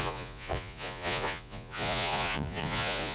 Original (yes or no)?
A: no